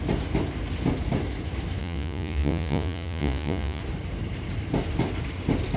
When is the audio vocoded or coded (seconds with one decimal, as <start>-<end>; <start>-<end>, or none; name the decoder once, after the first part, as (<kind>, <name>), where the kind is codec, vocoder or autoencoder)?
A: 1.8-3.8 (vocoder, Vocos)